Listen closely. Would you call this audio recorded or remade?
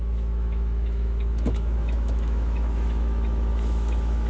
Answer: remade